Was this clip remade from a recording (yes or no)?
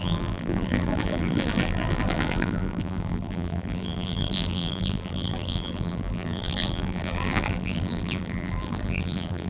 yes